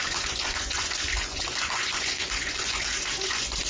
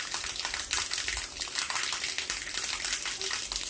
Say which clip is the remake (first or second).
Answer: first